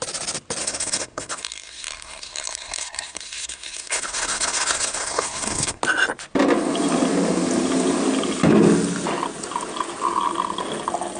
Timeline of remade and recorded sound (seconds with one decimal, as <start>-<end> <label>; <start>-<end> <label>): 0.0-0.6 recorded; 0.6-5.8 remade; 5.8-11.2 recorded